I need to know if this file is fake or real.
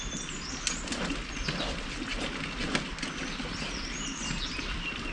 real